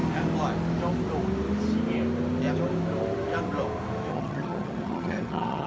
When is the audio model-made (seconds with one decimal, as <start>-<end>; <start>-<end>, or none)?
4.1-5.7